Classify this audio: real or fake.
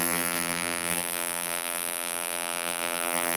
fake